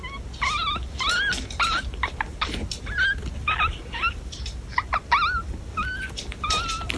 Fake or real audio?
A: real